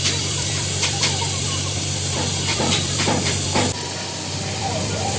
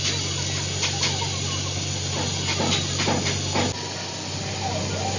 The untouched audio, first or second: second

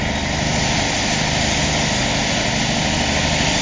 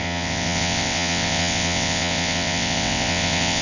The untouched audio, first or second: first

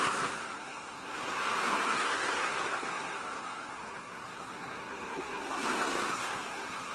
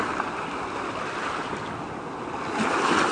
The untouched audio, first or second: second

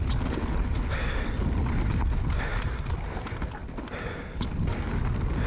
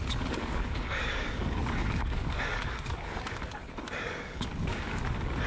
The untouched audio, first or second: first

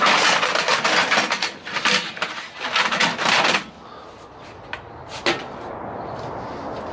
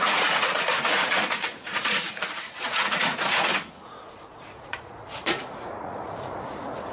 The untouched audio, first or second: first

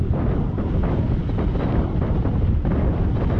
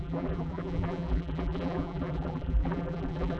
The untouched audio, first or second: first